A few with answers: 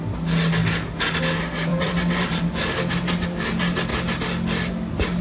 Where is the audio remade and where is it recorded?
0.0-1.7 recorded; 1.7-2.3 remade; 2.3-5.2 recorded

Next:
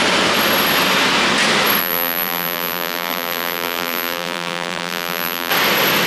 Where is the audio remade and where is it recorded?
0.0-1.8 recorded; 1.8-5.5 remade; 5.5-6.1 recorded

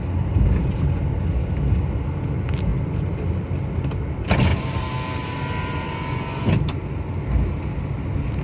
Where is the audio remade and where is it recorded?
0.0-8.4 recorded